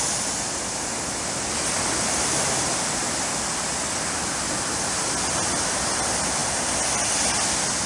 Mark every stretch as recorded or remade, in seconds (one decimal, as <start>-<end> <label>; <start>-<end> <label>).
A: 0.0-7.9 recorded